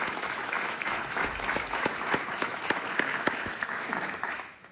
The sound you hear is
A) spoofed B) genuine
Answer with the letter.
A